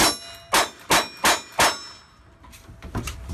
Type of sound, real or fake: real